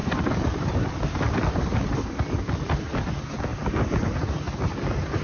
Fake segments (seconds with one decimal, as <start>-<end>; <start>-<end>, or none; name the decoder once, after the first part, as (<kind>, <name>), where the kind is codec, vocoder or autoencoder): 0.0-2.5 (vocoder, BigVGAN v2); 3.5-4.6